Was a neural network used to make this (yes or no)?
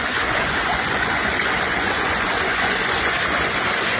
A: yes